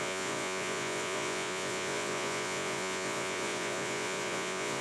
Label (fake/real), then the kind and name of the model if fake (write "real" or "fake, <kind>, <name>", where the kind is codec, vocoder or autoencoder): fake, vocoder, Vocos